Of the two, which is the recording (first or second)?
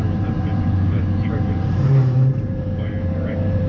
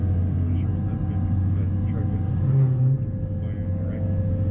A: second